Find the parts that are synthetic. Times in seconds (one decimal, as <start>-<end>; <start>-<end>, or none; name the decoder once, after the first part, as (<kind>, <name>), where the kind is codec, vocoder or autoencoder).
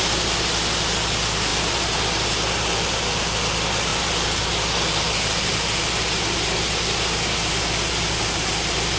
none